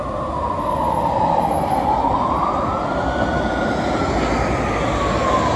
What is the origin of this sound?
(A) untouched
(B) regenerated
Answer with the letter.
A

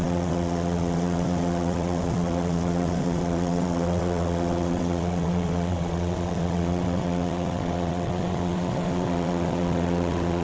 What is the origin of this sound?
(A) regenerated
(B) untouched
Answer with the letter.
A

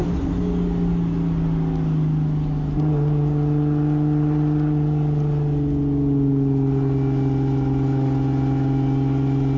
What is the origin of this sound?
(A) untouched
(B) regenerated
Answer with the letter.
A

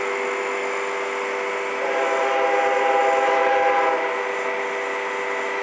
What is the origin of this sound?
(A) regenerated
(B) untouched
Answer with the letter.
B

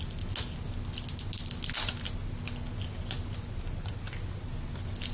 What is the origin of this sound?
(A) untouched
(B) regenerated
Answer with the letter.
A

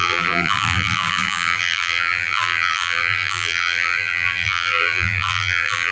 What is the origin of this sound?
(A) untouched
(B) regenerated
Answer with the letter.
B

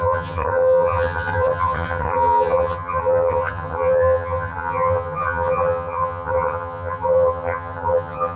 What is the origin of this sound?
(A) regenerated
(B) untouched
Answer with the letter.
A